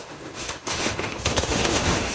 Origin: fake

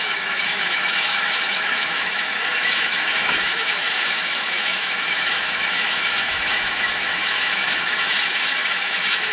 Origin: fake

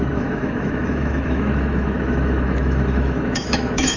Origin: fake